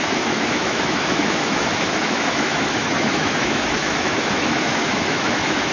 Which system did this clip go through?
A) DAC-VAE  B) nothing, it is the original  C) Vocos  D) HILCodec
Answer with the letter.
A